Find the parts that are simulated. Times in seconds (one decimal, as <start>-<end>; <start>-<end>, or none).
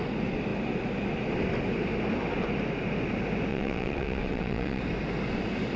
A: 3.5-4.8